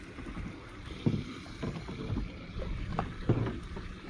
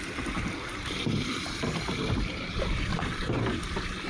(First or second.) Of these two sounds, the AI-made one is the second